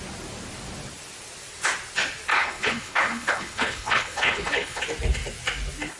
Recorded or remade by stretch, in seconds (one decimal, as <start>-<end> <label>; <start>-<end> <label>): 0.0-2.3 recorded; 2.3-4.8 remade; 4.8-6.0 recorded